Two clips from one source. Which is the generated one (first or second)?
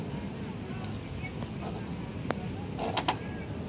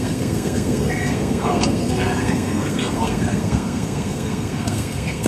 second